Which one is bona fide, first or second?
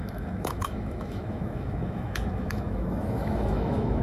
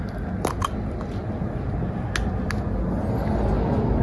second